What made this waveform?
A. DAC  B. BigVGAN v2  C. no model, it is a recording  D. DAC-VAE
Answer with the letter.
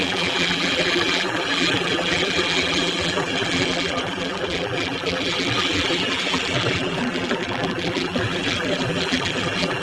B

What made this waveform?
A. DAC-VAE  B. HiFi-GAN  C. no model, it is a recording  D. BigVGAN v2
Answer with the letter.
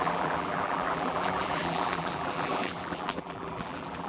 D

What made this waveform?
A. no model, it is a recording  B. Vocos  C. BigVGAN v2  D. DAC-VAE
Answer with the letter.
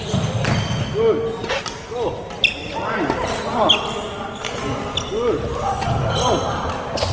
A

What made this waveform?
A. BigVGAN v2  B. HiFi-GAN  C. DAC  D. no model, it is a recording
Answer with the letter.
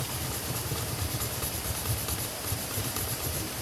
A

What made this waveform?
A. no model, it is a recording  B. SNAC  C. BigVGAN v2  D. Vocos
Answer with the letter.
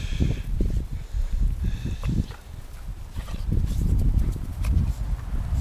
A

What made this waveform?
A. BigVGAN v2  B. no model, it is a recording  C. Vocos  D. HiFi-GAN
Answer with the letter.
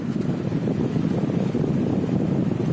B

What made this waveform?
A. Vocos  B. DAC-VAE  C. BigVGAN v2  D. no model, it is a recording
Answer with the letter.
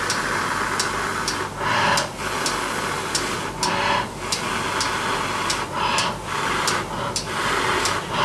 D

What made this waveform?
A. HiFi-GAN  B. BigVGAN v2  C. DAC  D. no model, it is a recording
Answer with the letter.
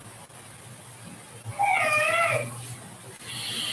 D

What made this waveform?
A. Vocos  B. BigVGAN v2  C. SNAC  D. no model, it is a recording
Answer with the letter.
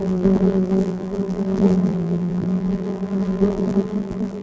B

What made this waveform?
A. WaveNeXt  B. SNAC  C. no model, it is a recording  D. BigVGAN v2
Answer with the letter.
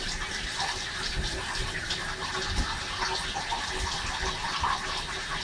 C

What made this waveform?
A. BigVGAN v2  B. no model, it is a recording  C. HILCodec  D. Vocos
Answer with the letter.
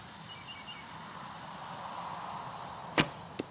B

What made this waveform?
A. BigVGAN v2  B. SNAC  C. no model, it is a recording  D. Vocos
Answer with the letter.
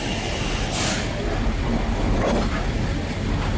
C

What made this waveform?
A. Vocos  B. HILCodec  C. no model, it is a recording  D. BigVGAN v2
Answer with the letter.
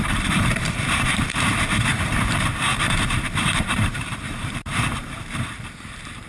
D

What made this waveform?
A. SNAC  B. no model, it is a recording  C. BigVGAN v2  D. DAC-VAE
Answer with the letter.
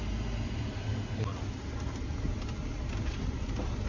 B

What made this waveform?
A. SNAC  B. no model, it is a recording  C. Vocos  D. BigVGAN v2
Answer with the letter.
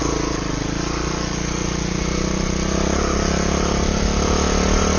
B